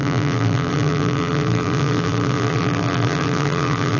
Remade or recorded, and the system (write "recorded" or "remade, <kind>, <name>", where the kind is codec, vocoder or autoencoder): remade, vocoder, BigVGAN v2